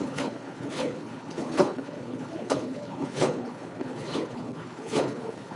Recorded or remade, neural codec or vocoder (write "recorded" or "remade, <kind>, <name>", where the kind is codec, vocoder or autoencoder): remade, codec, HILCodec